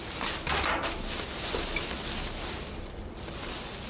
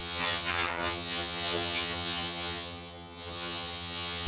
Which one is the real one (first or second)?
first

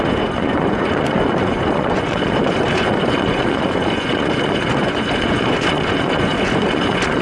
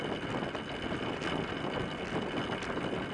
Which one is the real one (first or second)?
second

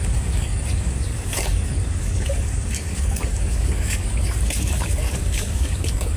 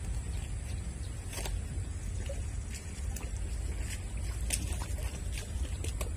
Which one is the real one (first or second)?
second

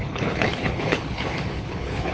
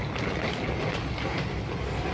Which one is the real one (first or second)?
second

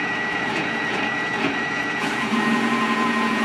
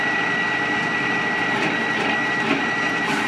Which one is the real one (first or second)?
second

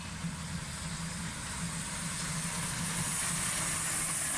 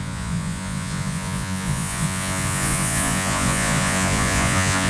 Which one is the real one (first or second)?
first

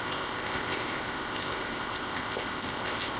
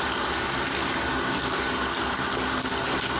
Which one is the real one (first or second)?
second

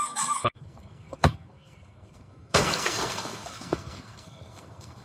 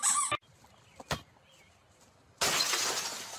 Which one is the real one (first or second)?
second